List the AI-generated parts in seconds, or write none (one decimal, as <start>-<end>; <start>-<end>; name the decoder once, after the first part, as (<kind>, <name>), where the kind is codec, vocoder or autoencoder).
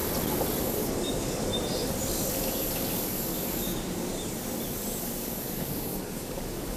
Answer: 0.6-1.5 (codec, DAC); 2.3-4.1; 5.0-6.8